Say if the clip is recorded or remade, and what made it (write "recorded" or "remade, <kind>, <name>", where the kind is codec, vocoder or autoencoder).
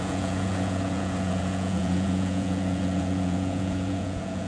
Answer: remade, vocoder, Vocos